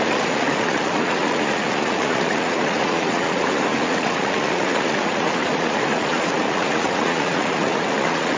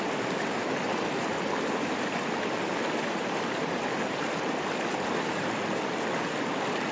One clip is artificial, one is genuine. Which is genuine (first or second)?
second